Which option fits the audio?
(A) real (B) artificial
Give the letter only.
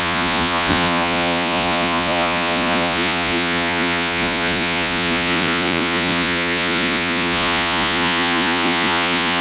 B